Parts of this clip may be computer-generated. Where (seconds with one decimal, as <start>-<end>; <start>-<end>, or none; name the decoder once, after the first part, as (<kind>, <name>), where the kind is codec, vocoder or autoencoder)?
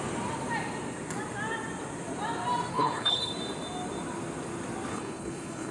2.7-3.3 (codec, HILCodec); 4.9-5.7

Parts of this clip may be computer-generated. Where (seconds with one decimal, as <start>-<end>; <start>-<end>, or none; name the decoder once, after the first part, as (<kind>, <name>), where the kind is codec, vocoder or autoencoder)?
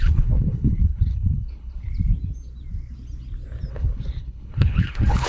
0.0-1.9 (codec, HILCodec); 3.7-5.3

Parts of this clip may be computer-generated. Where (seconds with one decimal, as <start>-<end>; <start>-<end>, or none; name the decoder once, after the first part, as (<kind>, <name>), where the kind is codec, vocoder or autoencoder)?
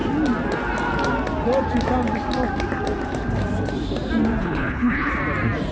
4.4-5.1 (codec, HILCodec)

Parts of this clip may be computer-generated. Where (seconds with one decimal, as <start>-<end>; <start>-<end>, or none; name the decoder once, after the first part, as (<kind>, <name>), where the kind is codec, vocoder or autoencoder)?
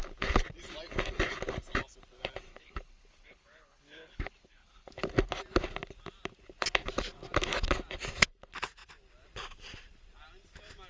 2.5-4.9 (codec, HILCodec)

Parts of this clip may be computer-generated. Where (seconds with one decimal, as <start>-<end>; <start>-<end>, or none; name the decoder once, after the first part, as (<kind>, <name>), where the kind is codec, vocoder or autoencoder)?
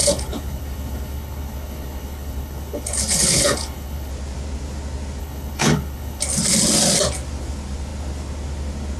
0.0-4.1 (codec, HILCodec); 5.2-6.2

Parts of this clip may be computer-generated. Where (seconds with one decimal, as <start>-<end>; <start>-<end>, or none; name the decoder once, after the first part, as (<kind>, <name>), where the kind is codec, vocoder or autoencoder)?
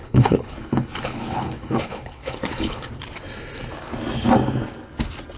0.0-2.9 (codec, HILCodec)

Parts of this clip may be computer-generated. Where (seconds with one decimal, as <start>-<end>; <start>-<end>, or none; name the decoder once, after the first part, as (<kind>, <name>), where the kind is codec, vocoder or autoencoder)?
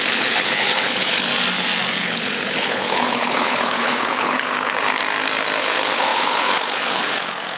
0.0-1.3 (codec, HILCodec); 2.0-5.0; 5.6-7.6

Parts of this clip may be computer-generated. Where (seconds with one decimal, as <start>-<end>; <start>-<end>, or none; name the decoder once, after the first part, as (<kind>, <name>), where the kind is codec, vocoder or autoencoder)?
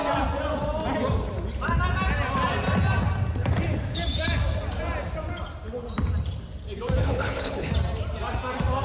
7.0-7.7 (codec, HILCodec)